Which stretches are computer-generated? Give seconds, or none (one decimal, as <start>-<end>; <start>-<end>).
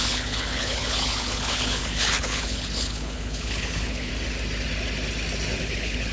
0.0-4.1; 5.6-6.1